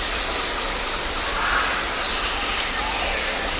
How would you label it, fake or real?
real